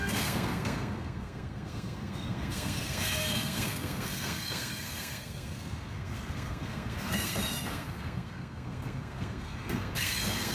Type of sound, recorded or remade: remade